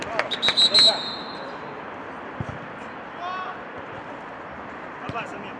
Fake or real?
real